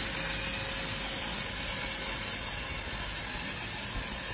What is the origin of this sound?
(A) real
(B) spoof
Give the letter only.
A